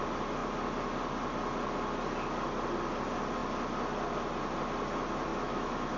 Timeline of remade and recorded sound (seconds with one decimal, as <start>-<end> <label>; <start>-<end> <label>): 0.0-5.3 recorded; 5.3-6.0 remade